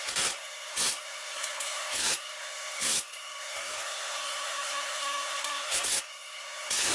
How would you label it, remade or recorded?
remade